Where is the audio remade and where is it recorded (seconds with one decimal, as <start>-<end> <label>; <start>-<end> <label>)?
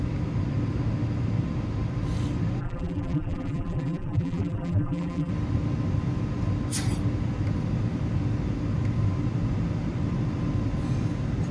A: 0.0-2.6 recorded; 2.6-5.3 remade; 5.3-11.5 recorded